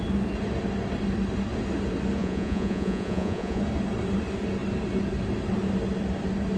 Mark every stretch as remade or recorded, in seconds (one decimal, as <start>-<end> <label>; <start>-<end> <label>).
0.0-2.2 recorded; 2.2-3.6 remade; 3.6-6.6 recorded